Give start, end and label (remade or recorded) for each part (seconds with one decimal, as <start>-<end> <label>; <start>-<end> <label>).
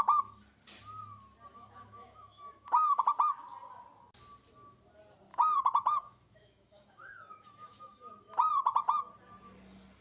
0.0-1.5 recorded; 1.5-3.0 remade; 3.0-5.3 recorded; 5.3-8.1 remade; 8.1-10.0 recorded